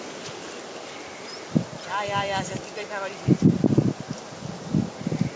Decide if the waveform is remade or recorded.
recorded